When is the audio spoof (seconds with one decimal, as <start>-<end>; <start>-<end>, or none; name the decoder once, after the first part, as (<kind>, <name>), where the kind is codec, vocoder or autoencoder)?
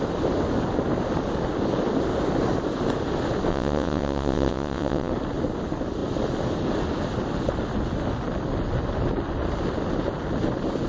3.5-5.1 (vocoder, WaveNeXt)